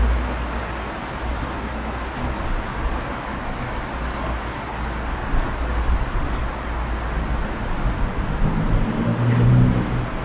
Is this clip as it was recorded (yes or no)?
yes